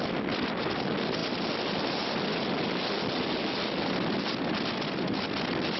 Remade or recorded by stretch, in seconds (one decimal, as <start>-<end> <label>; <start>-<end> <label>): 0.0-5.8 recorded